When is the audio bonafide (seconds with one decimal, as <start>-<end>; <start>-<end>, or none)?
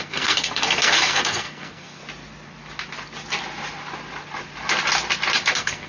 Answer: 2.0-5.5